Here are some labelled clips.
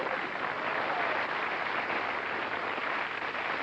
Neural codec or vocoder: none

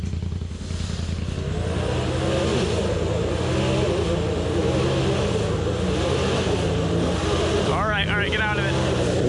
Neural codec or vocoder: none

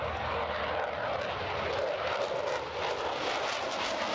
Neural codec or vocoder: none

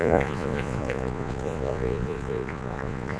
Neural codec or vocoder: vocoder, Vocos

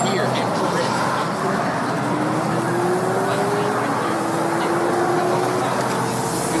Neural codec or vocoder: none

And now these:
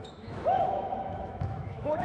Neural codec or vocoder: autoencoder, DAC-VAE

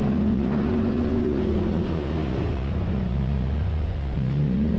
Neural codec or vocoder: vocoder, Vocos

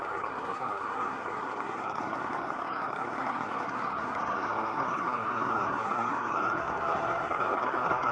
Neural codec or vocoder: codec, SNAC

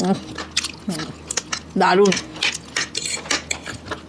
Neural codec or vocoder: none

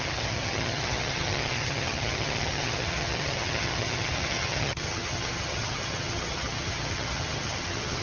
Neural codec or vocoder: vocoder, HiFi-GAN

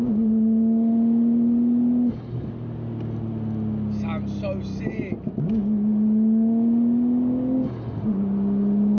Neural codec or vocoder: none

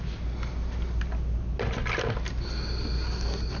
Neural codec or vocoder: none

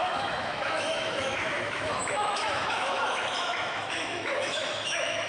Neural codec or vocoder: autoencoder, DAC-VAE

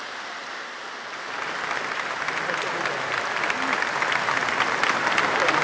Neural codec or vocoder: none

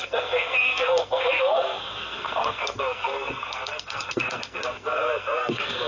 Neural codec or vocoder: codec, SNAC